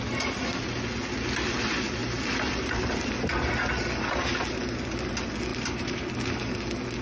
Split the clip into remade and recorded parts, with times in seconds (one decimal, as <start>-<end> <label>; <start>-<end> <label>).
0.0-2.0 recorded; 2.0-2.8 remade; 2.8-5.5 recorded; 5.5-6.1 remade; 6.1-7.0 recorded